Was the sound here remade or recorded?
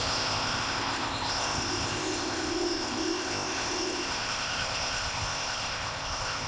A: remade